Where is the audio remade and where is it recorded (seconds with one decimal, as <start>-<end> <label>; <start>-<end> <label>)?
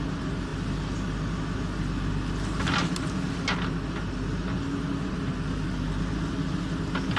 0.0-7.2 recorded